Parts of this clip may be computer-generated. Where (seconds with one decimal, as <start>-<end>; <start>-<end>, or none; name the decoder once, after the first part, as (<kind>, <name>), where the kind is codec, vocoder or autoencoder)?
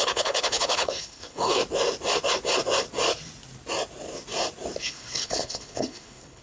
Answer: 0.0-1.6 (codec, HILCodec); 4.8-6.4